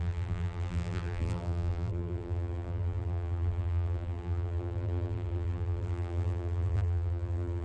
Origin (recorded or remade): remade